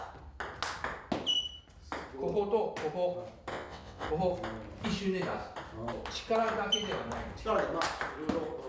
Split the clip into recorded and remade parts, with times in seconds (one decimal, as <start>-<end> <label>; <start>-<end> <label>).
0.0-3.5 recorded; 3.5-4.1 remade; 4.1-8.7 recorded